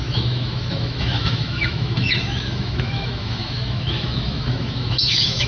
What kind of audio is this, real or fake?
fake